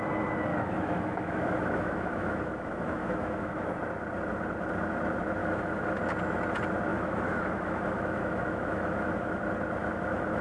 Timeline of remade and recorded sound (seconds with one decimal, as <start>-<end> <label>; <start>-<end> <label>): 0.0-0.5 recorded; 0.5-3.7 remade; 3.7-5.4 recorded; 5.4-6.0 remade; 6.0-6.9 recorded; 6.9-9.4 remade; 9.4-9.8 recorded; 9.8-10.4 remade